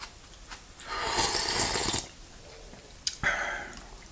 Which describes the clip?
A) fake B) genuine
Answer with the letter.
B